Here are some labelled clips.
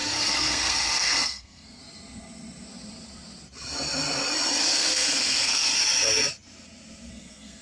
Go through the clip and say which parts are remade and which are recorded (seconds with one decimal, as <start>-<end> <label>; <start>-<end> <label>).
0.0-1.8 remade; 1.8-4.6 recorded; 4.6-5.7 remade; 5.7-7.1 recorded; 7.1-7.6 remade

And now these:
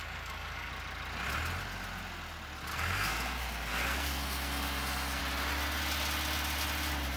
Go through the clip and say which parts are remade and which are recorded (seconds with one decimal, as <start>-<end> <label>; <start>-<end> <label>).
0.0-0.7 remade; 0.7-2.7 recorded; 2.7-5.2 remade; 5.2-7.2 recorded

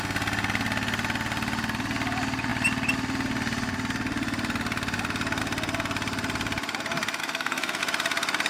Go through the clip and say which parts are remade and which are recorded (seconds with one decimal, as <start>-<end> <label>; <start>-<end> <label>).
0.0-7.2 recorded; 7.2-7.8 remade; 7.8-8.5 recorded

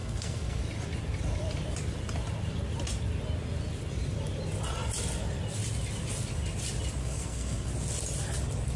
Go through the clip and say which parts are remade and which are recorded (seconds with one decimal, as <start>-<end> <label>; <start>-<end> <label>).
0.0-0.6 remade; 0.6-7.0 recorded; 7.0-7.7 remade; 7.7-8.8 recorded

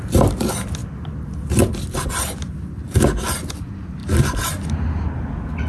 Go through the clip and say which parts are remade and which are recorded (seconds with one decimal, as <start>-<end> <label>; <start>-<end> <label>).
0.0-5.7 recorded